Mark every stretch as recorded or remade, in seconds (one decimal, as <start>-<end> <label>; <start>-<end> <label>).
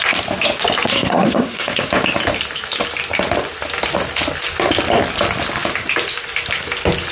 0.0-0.9 recorded; 0.9-1.9 remade; 1.9-7.1 recorded